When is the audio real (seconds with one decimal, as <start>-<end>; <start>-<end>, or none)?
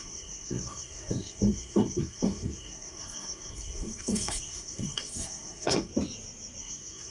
5.9-6.6